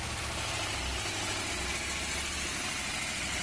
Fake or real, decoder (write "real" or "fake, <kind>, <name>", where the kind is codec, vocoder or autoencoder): real